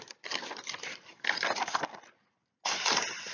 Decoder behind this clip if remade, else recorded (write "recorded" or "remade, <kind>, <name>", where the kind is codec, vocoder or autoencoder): recorded